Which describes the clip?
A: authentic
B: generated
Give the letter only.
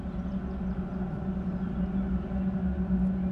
A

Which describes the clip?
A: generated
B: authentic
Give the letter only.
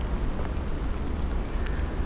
B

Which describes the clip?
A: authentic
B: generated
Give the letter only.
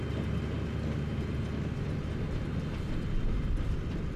A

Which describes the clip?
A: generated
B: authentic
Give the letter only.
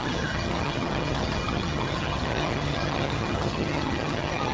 A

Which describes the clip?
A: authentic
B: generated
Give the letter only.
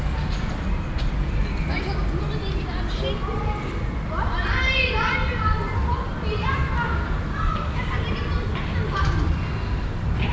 A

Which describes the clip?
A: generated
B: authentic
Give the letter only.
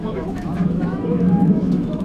A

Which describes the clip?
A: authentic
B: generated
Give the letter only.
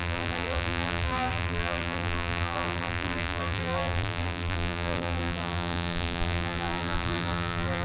B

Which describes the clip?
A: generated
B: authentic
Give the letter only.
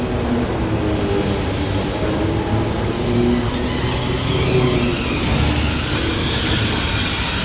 B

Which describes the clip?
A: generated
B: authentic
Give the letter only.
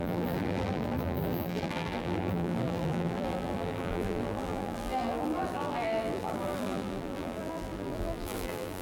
A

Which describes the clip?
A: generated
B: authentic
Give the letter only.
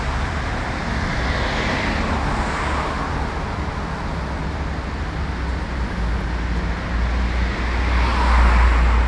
B